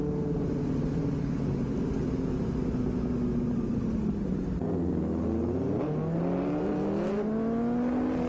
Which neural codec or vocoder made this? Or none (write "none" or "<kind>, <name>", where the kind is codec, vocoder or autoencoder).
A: none